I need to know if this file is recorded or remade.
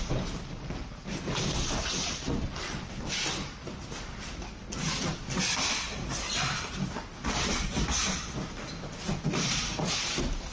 recorded